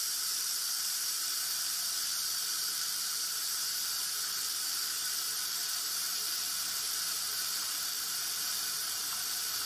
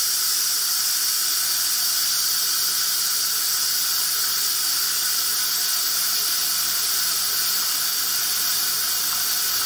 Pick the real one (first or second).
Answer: second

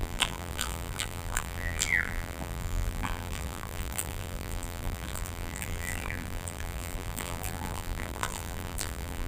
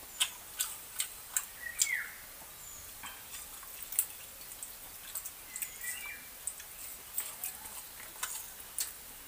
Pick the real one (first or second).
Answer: second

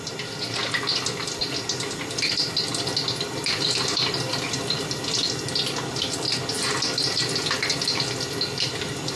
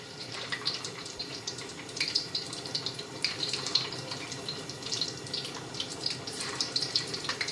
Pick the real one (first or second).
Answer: first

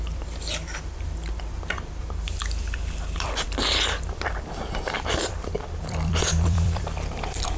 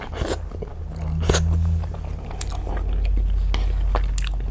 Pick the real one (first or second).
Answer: second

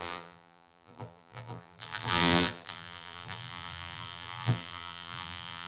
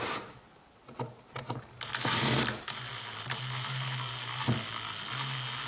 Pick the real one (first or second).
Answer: second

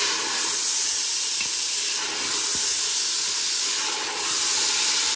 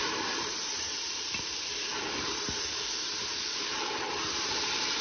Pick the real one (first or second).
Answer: first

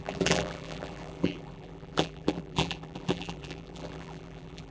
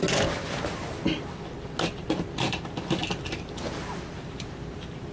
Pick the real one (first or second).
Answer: second